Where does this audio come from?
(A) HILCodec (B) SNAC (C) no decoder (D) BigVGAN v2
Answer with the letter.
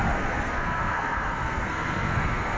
B